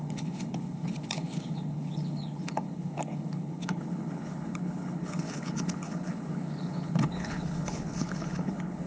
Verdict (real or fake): fake